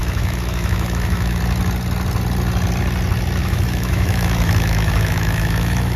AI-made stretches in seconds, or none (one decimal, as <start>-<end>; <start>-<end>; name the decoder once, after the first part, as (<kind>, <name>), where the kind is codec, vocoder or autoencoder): 0.0-1.4 (autoencoder, DAC-VAE); 3.4-6.0